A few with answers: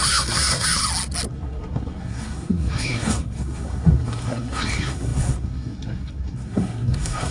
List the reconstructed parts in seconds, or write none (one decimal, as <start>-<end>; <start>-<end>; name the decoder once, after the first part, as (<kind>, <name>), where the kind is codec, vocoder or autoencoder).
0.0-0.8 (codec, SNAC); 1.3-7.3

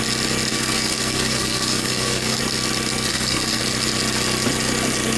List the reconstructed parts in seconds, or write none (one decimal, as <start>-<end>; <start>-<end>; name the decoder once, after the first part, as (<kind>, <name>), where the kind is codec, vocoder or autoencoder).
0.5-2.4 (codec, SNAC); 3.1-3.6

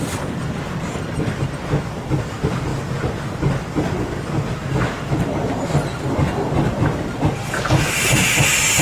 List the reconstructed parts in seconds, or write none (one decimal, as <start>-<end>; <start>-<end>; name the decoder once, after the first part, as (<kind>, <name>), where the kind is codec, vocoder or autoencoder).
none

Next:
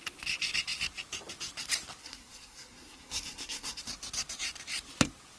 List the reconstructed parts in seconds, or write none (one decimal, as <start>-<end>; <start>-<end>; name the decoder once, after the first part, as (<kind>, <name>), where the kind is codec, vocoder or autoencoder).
2.0-3.8 (codec, SNAC)

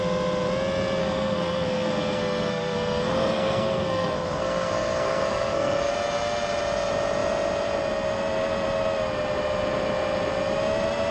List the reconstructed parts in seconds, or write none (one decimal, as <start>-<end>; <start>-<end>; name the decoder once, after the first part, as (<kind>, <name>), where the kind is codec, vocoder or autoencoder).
1.0-5.9 (codec, SNAC)

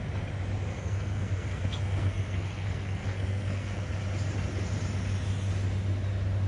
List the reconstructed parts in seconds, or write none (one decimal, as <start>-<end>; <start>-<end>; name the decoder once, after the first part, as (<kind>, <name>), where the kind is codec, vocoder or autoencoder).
0.7-3.8 (codec, SNAC)

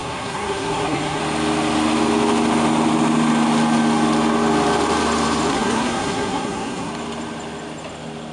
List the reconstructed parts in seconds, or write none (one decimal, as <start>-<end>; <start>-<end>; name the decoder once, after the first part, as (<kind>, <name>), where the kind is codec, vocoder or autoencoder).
0.0-1.2 (codec, SNAC); 5.5-6.9